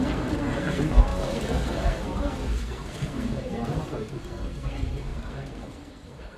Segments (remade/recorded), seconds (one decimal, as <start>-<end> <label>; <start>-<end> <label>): 0.0-6.4 remade